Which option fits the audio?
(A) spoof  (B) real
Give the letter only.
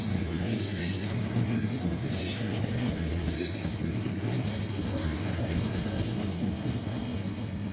A